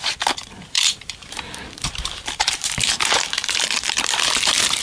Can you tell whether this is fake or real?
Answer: fake